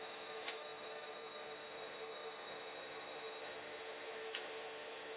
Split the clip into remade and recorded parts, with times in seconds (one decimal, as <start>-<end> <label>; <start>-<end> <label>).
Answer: 0.0-5.2 remade